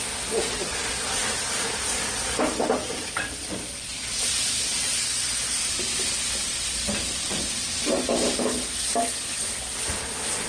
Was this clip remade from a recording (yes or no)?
no